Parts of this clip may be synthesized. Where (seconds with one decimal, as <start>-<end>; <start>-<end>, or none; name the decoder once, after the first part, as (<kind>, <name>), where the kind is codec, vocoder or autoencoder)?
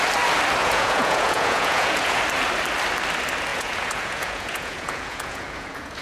0.6-2.2 (vocoder, Vocos); 3.5-6.0